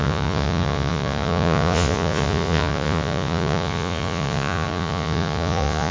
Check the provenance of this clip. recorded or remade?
remade